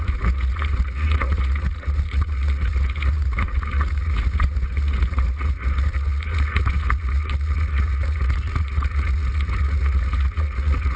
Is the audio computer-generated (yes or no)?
yes